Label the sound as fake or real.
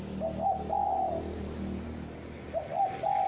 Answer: real